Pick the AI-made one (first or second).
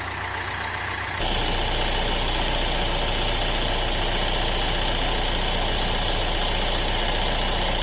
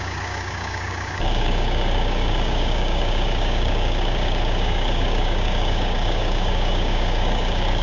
second